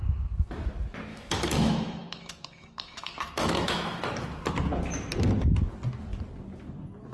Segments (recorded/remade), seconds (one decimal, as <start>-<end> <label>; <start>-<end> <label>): 0.0-1.1 recorded; 1.1-4.0 remade; 4.0-7.1 recorded